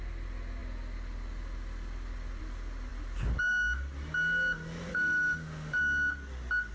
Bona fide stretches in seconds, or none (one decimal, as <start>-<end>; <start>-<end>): 0.0-4.9; 5.8-6.7